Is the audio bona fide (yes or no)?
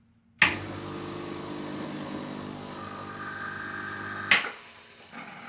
yes